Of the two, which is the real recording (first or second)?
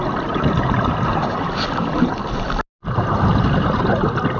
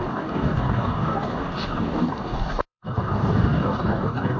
first